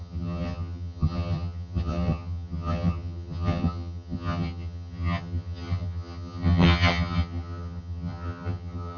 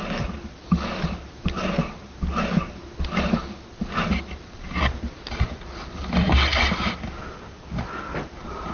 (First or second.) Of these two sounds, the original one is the second